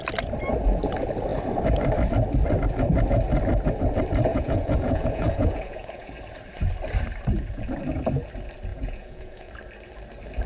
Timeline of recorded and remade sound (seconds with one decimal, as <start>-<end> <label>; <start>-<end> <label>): 0.0-4.3 recorded; 4.3-6.1 remade; 6.1-8.7 recorded; 8.7-9.5 remade; 9.5-10.5 recorded